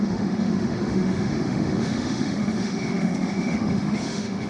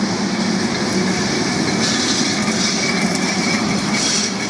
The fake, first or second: first